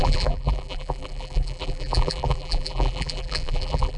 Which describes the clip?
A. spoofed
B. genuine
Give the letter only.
A